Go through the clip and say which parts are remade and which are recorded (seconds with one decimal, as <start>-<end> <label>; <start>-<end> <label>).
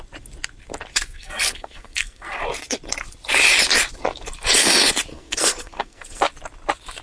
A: 0.0-0.9 recorded; 0.9-2.4 remade; 2.4-5.1 recorded; 5.1-6.2 remade; 6.2-7.0 recorded